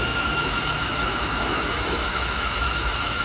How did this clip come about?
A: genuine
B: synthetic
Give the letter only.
B